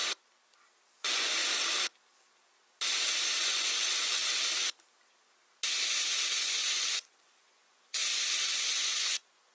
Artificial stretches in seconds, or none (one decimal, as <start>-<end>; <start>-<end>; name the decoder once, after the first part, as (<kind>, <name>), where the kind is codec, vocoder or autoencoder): 1.0-1.4 (vocoder, Vocos); 3.4-4.2; 6.3-8.0; 8.5-9.5